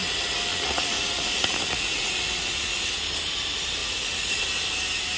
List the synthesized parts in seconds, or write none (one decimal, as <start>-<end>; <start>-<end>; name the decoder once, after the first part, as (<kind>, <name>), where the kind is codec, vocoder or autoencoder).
0.5-2.7 (vocoder, Vocos); 3.8-4.4